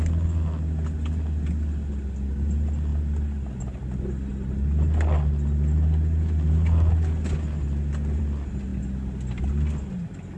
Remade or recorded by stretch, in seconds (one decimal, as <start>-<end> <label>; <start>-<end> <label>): 0.0-10.4 recorded